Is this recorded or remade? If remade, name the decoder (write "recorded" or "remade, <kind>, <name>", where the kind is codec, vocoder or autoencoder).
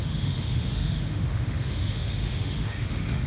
remade, autoencoder, DAC-VAE